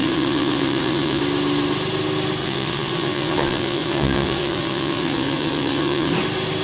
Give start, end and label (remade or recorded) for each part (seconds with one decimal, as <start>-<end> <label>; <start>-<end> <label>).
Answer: 0.0-1.2 remade; 1.2-2.4 recorded; 2.4-6.1 remade; 6.1-6.6 recorded